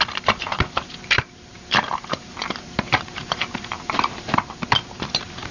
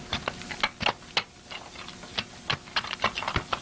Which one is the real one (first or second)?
second